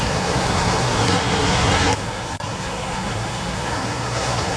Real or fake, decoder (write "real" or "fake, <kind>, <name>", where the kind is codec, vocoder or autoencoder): fake, codec, SNAC